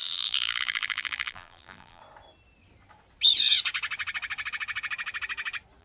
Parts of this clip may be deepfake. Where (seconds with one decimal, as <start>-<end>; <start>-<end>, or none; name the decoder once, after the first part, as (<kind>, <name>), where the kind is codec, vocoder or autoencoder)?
0.0-2.0 (vocoder, BigVGAN v2)